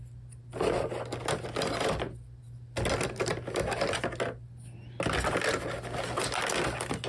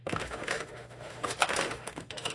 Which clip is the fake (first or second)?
second